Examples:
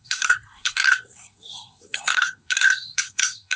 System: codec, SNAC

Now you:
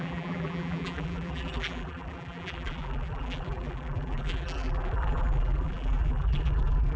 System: vocoder, BigVGAN v2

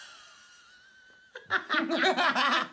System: none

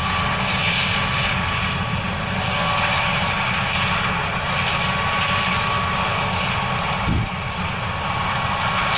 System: none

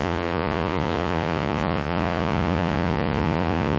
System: vocoder, Vocos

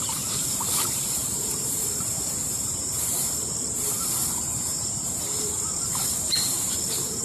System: vocoder, BigVGAN v2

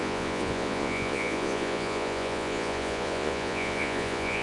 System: vocoder, Vocos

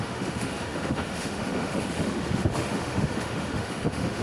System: autoencoder, DAC-VAE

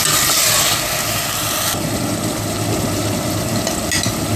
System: none